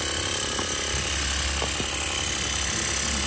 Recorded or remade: recorded